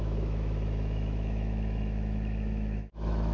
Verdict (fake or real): fake